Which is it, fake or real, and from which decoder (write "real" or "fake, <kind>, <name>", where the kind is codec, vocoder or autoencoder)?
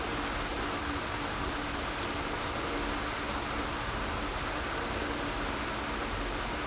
real